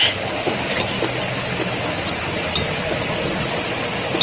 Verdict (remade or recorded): recorded